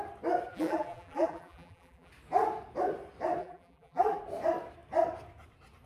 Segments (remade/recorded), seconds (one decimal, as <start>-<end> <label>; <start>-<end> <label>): 0.0-0.5 recorded; 0.5-2.1 remade; 2.1-3.4 recorded; 3.4-4.2 remade; 4.2-5.9 recorded